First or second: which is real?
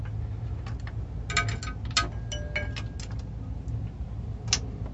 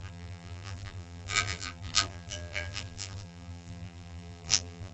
first